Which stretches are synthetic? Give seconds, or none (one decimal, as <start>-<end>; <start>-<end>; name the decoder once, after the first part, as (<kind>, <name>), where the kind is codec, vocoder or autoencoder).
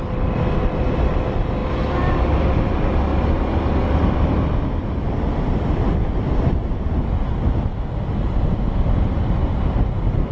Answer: 3.1-4.4 (vocoder, BigVGAN v2)